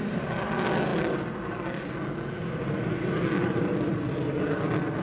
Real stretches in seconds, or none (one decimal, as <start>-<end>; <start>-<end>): 0.0-5.0